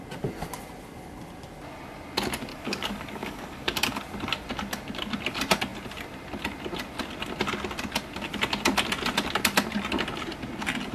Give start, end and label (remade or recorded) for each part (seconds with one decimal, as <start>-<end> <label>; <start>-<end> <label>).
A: 0.0-2.5 recorded; 2.5-4.0 remade; 4.0-10.9 recorded